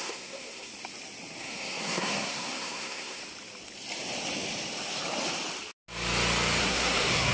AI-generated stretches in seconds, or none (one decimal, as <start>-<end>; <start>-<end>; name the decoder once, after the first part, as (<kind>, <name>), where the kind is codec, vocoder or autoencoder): 0.0-0.7 (codec, SNAC); 1.4-3.2; 6.6-7.3